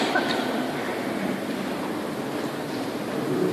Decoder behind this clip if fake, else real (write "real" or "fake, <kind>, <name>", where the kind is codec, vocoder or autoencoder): real